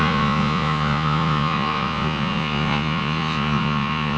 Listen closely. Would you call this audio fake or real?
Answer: fake